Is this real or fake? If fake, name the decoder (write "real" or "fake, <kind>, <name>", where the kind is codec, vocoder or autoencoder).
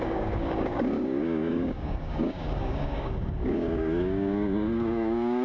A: fake, codec, DAC